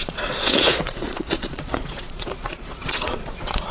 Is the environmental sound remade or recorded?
remade